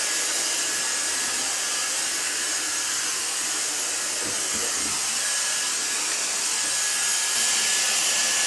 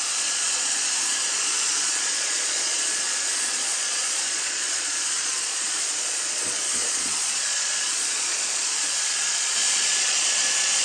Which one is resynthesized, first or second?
second